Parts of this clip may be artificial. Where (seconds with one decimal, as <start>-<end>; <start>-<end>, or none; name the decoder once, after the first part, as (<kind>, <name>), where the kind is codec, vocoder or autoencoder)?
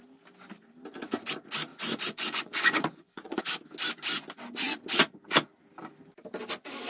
1.7-3.4 (vocoder, Vocos)